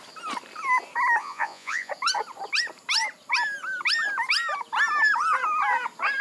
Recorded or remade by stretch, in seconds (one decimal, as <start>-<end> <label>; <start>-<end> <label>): 0.0-1.2 recorded; 1.2-1.9 remade; 1.9-6.2 recorded